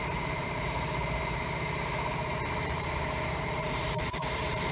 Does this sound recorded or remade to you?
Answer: remade